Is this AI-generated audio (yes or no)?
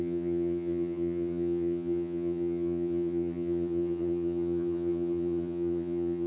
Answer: yes